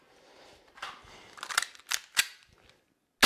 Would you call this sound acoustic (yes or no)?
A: yes